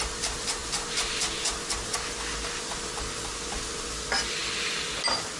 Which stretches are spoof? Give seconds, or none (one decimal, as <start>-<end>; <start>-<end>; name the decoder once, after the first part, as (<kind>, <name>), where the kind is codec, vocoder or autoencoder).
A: none